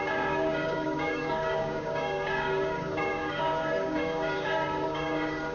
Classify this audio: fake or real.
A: fake